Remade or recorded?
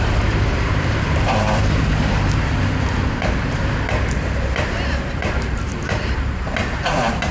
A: remade